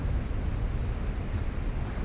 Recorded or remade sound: recorded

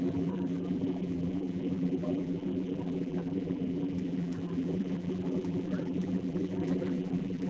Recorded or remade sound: remade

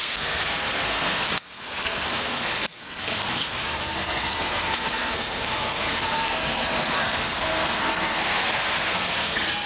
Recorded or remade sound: remade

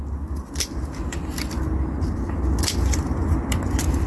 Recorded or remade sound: recorded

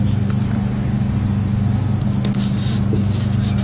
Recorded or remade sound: recorded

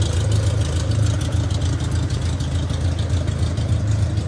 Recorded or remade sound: recorded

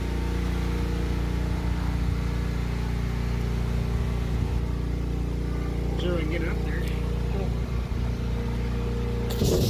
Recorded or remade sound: recorded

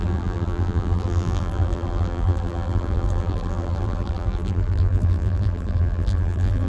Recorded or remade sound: remade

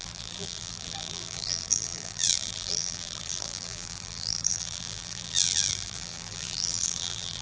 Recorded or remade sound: remade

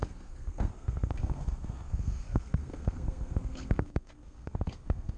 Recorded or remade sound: remade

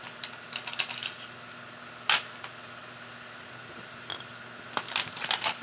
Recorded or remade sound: recorded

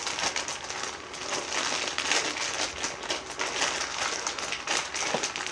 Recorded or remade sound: recorded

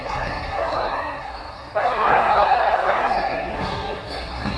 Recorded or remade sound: remade